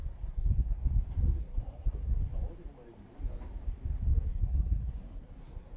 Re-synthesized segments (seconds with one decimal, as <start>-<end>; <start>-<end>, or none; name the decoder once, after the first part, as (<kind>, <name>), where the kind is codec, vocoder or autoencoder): 0.0-0.9 (codec, SNAC); 1.4-2.2; 4.1-5.8